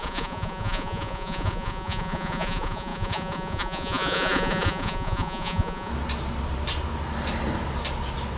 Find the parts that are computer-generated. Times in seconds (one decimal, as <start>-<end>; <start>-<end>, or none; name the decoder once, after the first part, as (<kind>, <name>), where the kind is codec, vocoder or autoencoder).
0.0-5.9 (vocoder, Vocos)